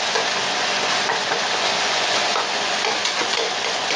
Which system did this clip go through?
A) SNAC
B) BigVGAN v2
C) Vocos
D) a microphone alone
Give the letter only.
C